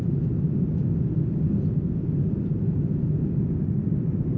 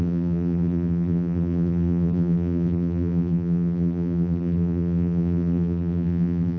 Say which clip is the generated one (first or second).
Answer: second